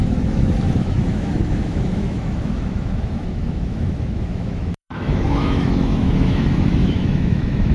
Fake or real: fake